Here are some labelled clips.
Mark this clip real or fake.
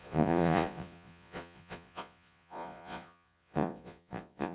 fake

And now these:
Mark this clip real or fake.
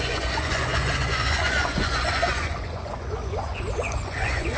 fake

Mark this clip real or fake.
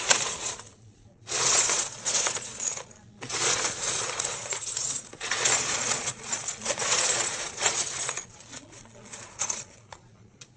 fake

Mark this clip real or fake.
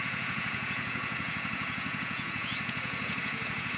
fake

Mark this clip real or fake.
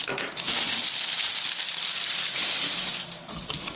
real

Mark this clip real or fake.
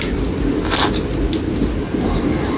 real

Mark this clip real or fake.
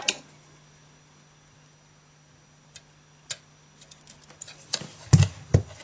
real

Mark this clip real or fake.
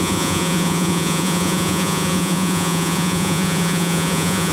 fake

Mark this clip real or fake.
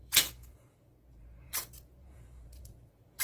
fake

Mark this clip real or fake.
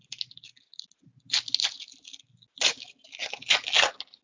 real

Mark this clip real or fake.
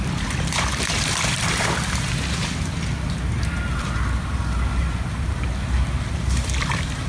real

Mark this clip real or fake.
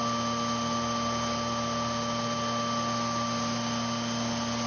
real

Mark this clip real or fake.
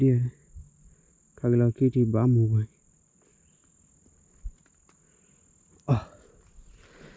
real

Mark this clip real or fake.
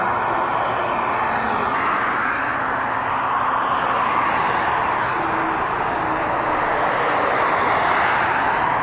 real